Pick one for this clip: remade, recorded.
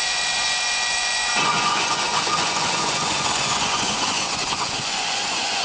remade